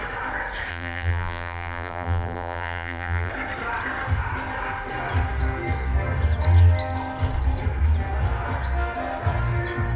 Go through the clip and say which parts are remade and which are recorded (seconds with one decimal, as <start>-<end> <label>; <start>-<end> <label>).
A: 0.0-0.7 recorded; 0.7-3.3 remade; 3.3-10.0 recorded